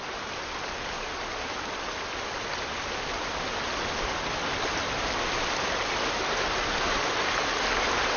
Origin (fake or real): real